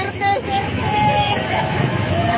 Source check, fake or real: fake